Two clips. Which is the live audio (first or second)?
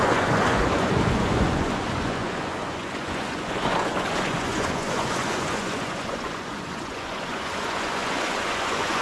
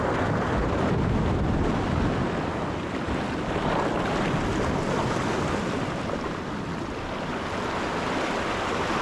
second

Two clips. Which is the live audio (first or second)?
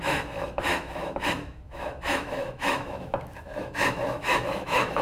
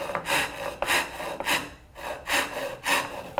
second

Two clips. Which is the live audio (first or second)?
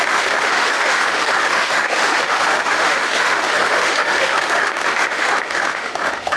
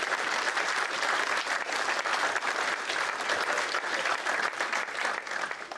second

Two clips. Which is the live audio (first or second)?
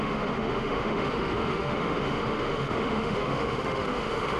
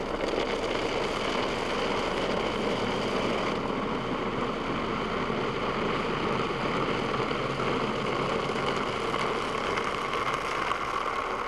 second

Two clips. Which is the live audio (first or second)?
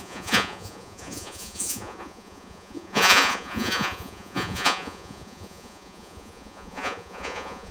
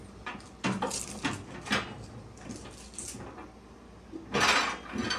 second